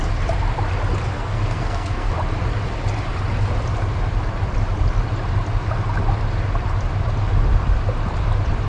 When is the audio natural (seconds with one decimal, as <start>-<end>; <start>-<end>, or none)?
0.0-1.1; 2.1-8.7